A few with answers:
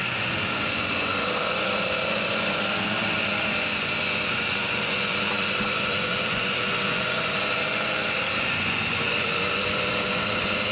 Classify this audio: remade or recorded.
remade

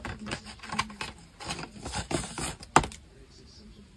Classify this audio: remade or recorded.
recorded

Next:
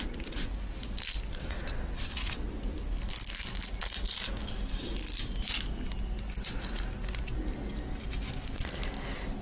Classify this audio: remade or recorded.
recorded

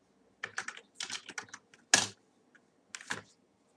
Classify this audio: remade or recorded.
recorded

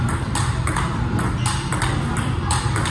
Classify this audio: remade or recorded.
recorded